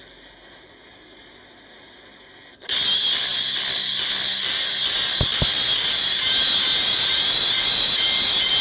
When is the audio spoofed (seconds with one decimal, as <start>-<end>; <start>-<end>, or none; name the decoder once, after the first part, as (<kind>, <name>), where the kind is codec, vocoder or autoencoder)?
none